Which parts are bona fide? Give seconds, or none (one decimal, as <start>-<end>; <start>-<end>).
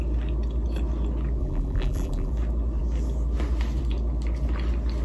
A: 0.0-1.4; 2.3-5.0